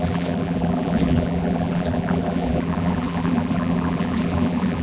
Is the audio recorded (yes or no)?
no